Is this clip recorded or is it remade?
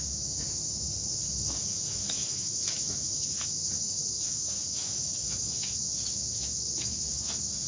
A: remade